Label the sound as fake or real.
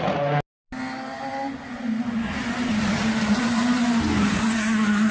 real